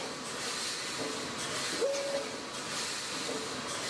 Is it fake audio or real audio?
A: real